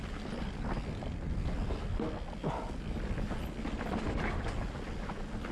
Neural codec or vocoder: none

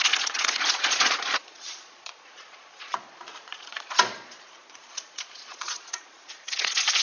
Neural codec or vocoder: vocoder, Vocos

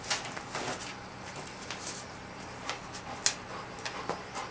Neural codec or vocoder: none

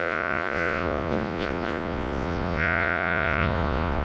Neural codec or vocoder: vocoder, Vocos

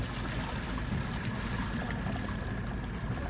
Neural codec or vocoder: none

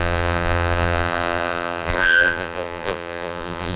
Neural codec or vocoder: vocoder, BigVGAN v2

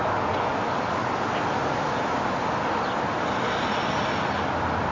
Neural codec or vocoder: none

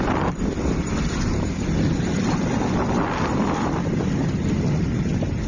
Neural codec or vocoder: none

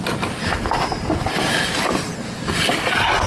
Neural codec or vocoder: none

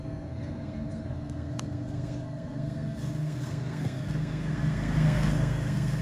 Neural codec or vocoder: codec, SNAC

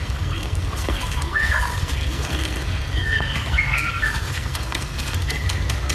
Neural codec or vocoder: codec, SNAC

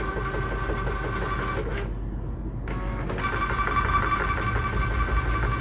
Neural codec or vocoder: none